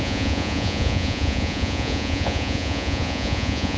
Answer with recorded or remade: remade